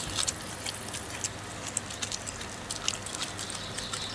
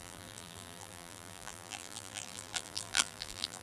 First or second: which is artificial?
second